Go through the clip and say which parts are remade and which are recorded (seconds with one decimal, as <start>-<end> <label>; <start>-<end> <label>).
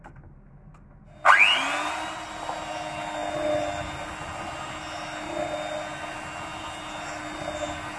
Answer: 0.0-8.0 recorded